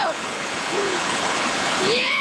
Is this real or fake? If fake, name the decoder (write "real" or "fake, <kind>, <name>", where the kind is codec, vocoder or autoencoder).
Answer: fake, codec, HILCodec